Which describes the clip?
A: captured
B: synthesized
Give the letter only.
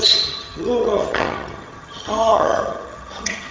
B